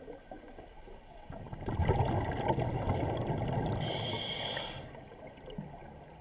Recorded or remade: recorded